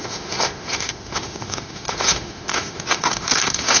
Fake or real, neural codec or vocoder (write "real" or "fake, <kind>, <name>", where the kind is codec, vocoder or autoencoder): fake, autoencoder, DAC-VAE